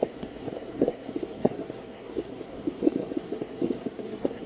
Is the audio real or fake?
fake